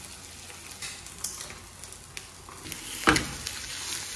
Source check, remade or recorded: recorded